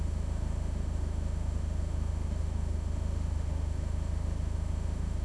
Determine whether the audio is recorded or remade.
remade